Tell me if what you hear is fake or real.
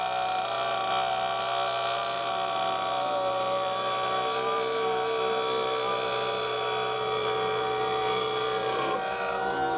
real